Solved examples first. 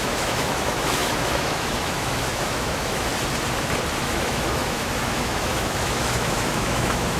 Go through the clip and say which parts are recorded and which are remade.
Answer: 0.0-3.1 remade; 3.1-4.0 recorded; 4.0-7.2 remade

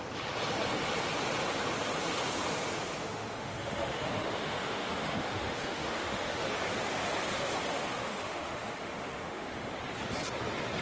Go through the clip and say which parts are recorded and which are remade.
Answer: 0.0-3.0 recorded; 3.0-6.4 remade; 6.4-7.7 recorded; 7.7-9.7 remade; 9.7-10.8 recorded